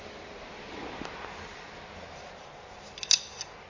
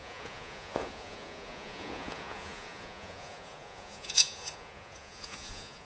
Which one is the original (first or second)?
first